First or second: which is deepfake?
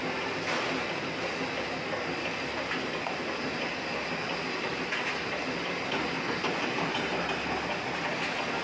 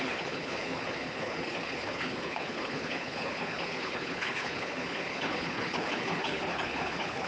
second